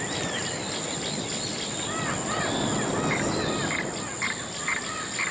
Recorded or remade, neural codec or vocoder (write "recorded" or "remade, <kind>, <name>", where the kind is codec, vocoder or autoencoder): recorded